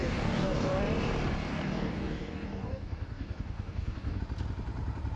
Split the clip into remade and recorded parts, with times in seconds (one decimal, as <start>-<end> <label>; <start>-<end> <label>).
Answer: 0.0-0.8 remade; 0.8-1.5 recorded; 1.5-4.2 remade; 4.2-5.2 recorded